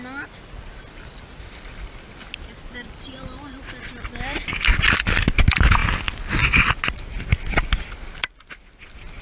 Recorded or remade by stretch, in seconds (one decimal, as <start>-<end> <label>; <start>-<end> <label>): 0.0-9.2 recorded